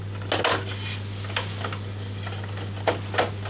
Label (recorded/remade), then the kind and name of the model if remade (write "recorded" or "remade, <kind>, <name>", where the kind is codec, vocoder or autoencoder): recorded